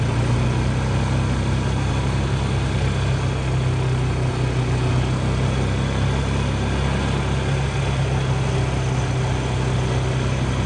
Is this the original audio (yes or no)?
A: yes